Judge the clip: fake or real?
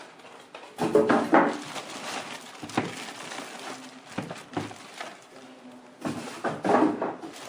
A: real